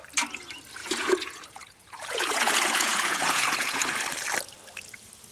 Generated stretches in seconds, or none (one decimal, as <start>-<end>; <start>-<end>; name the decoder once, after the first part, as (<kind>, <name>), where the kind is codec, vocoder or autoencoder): 0.8-4.0 (vocoder, Vocos)